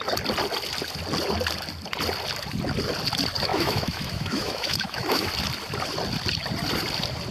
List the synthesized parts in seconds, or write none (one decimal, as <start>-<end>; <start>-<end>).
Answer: 3.5-5.3